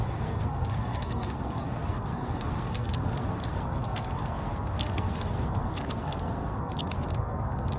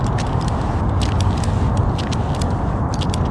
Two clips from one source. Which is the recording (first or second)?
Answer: second